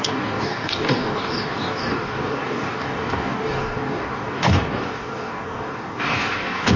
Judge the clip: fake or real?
fake